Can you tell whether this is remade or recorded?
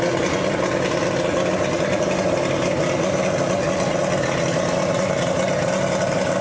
recorded